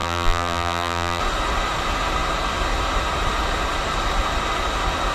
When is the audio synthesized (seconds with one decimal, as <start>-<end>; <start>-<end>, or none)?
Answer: 0.0-1.2